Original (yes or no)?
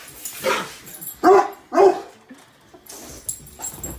yes